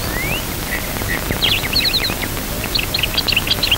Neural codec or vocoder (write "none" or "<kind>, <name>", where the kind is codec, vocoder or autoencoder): none